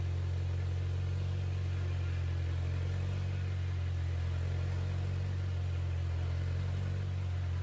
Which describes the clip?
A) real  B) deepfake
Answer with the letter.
A